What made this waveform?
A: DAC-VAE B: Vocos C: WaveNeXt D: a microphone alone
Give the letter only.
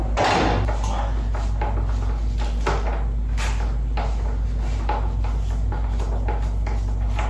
D